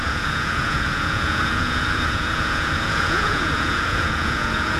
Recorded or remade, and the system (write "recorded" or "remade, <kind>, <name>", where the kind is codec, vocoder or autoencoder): remade, vocoder, Vocos